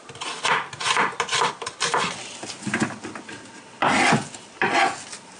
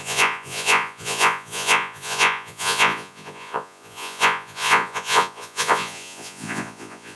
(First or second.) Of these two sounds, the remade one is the second